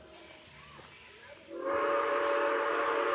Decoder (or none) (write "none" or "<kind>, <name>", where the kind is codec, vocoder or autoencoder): none